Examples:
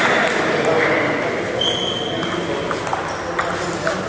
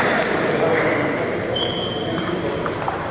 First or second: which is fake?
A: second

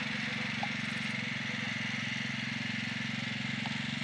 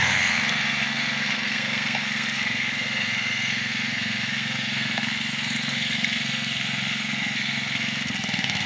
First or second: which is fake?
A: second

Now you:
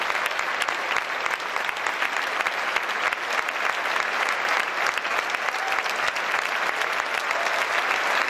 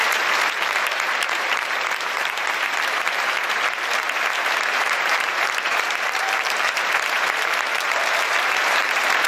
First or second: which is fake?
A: second